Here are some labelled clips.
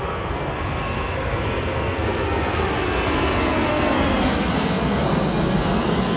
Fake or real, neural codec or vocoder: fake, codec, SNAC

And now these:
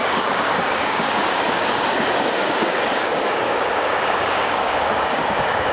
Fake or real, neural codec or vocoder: fake, codec, DAC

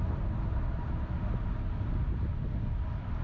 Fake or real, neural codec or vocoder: real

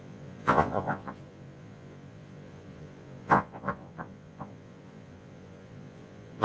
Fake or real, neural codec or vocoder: fake, vocoder, Vocos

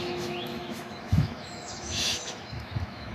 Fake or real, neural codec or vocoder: fake, autoencoder, DAC-VAE